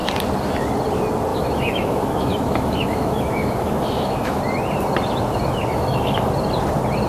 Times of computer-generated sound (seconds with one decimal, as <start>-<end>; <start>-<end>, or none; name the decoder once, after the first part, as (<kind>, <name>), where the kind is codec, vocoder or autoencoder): 1.3-4.4 (autoencoder, DAC-VAE); 5.7-6.3